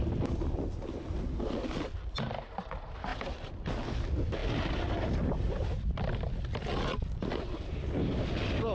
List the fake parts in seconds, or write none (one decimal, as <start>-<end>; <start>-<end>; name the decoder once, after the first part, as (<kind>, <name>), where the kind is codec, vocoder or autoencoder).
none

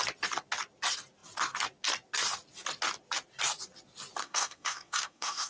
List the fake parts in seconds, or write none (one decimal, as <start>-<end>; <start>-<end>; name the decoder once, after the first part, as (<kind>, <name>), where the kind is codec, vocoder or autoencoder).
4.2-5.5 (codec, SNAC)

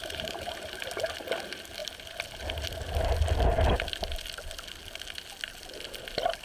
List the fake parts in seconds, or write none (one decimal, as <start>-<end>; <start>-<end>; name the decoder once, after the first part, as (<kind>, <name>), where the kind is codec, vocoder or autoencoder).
0.0-0.7 (vocoder, BigVGAN v2)